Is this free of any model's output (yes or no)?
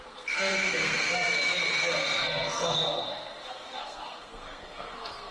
no